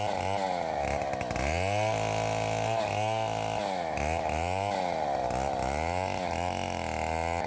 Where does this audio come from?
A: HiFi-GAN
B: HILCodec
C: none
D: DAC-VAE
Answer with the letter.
C